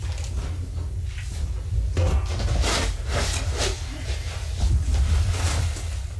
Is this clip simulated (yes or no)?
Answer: no